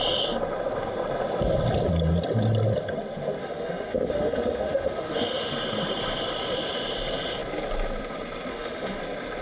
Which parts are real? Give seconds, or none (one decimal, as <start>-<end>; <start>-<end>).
0.0-3.4; 5.5-8.5; 9.0-9.4